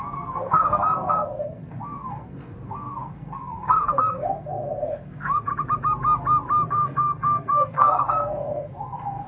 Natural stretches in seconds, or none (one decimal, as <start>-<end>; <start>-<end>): 5.5-6.7